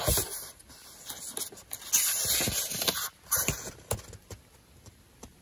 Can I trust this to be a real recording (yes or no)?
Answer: yes